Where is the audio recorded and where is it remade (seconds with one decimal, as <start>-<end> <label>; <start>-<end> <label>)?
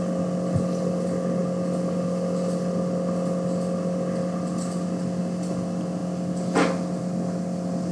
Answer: 0.0-7.9 recorded